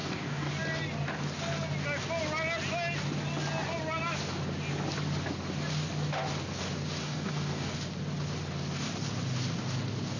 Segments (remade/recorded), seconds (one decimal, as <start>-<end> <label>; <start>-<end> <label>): 0.0-0.5 remade; 0.5-7.0 recorded; 7.0-7.7 remade; 7.7-10.2 recorded

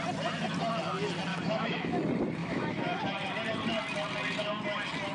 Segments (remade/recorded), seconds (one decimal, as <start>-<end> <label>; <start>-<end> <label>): 0.0-1.3 recorded; 1.3-2.0 remade; 2.0-2.4 recorded; 2.4-3.0 remade; 3.0-5.1 recorded

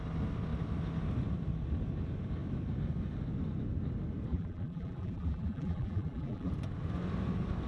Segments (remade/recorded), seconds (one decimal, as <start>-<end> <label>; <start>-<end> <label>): 0.0-4.3 recorded; 4.3-6.5 remade; 6.5-7.7 recorded

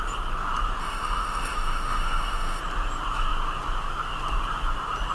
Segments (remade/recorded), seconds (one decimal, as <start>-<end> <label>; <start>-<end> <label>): 0.0-0.8 recorded; 0.8-2.6 remade; 2.6-5.1 recorded

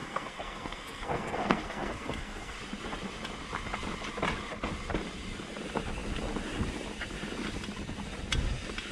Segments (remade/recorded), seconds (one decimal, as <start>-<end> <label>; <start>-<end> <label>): 0.0-2.6 remade; 2.6-8.9 recorded

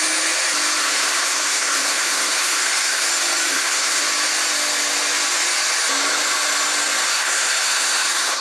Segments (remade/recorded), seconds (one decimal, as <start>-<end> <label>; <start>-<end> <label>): 0.0-0.8 recorded; 0.8-3.1 remade; 3.1-3.5 recorded; 3.5-4.0 remade; 4.0-7.1 recorded; 7.1-8.4 remade